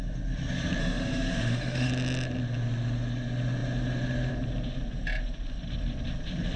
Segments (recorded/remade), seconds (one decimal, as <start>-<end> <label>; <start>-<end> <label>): 0.0-0.8 recorded; 0.8-1.9 remade; 1.9-6.6 recorded

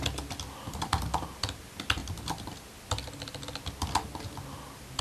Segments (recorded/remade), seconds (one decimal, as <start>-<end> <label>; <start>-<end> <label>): 0.0-5.0 recorded